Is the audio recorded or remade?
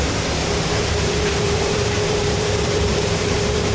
remade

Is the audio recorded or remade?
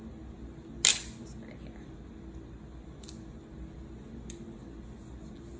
recorded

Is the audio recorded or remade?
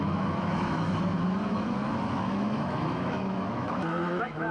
remade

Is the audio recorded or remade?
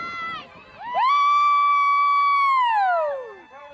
recorded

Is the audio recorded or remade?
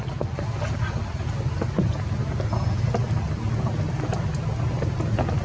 recorded